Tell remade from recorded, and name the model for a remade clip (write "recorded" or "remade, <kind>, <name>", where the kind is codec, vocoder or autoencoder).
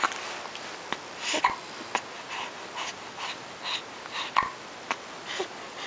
recorded